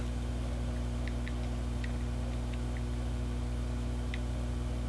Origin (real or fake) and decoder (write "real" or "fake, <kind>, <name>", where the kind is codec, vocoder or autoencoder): real